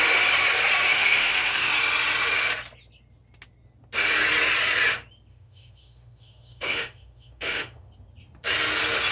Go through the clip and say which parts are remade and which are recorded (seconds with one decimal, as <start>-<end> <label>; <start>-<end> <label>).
0.0-0.9 recorded; 0.9-1.7 remade; 1.7-5.3 recorded; 5.3-7.9 remade; 7.9-9.1 recorded

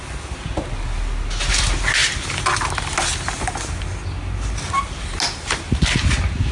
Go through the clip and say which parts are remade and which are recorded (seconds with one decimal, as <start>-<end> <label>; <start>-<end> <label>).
0.0-6.5 recorded

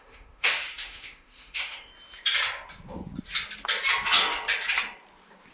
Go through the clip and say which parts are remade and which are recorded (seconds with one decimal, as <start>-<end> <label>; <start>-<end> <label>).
0.0-1.9 remade; 1.9-5.5 recorded

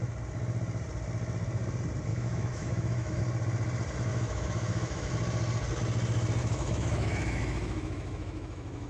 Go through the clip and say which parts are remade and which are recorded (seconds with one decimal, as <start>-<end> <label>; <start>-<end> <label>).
0.0-2.1 recorded; 2.1-3.2 remade; 3.2-4.1 recorded; 4.1-5.1 remade; 5.1-6.4 recorded; 6.4-8.9 remade